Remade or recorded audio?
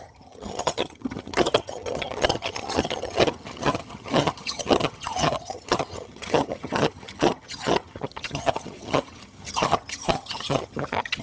remade